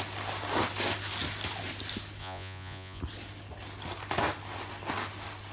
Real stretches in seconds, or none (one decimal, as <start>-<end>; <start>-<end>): 0.0-2.2; 3.0-5.5